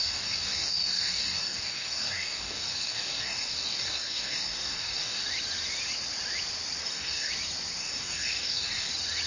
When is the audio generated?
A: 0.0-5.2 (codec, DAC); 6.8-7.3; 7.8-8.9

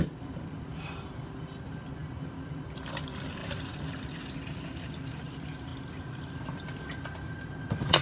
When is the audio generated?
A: 0.0-5.7 (vocoder, BigVGAN v2); 6.2-8.0

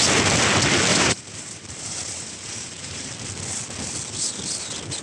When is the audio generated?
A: 0.9-3.1 (vocoder, BigVGAN v2)

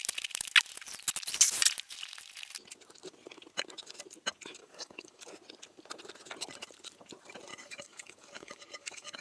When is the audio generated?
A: 4.6-5.2 (codec, DAC); 7.5-9.2

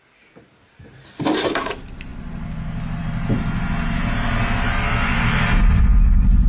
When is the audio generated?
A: none

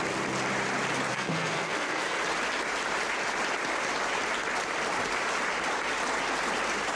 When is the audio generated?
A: 1.1-2.2 (codec, SNAC)